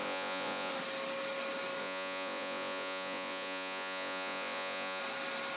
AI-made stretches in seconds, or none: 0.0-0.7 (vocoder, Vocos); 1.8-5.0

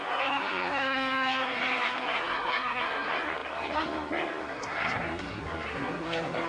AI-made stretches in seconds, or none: 0.0-6.5 (codec, SNAC)

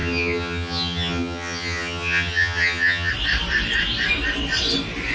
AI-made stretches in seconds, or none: 0.0-3.1 (vocoder, HiFi-GAN)

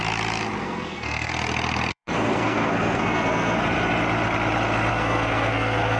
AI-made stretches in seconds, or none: 0.6-1.3 (codec, SNAC); 1.9-3.6; 4.9-6.0

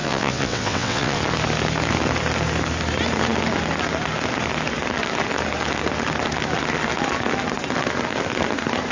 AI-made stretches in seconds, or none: 0.0-1.2 (vocoder, WaveNeXt)

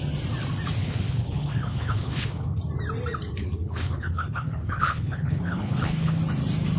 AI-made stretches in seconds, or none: 0.8-2.6 (codec, HILCodec); 3.4-6.2

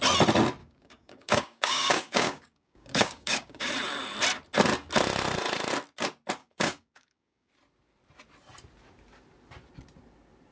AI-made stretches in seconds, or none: 0.6-3.7 (codec, DAC); 6.4-7.5

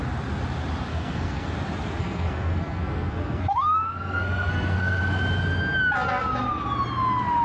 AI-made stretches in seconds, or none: 0.9-1.5 (codec, SNAC); 2.0-5.0